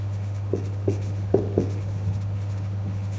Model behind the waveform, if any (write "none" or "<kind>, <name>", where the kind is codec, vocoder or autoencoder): autoencoder, DAC-VAE